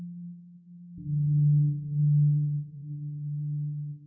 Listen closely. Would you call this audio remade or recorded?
recorded